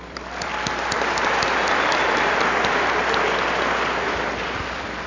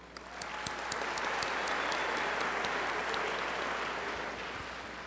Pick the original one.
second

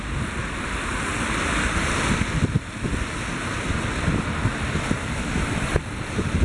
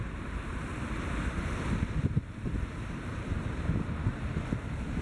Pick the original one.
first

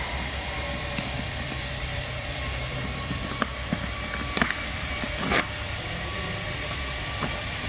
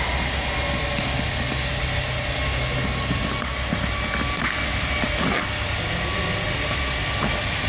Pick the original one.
second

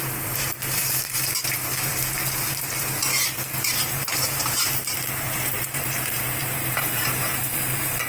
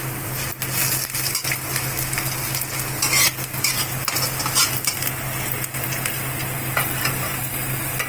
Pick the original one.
second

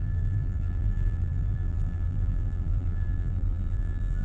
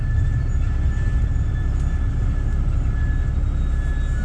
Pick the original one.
second